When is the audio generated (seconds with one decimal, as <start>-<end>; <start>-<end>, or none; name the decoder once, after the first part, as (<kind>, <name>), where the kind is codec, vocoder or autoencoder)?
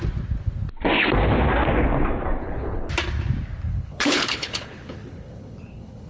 2.4-2.9 (codec, HILCodec); 3.7-6.1